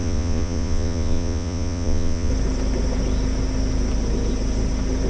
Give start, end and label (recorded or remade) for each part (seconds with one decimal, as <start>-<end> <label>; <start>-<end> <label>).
0.0-2.3 remade; 2.3-5.1 recorded